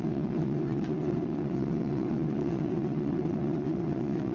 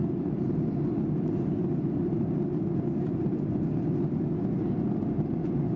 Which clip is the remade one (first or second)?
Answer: first